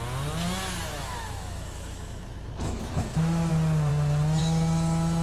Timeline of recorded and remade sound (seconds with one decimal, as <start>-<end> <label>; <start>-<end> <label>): 0.0-0.9 recorded; 0.9-3.5 remade; 3.5-5.2 recorded